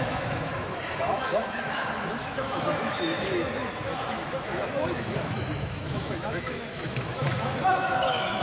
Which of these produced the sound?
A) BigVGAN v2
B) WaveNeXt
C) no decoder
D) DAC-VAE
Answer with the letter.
D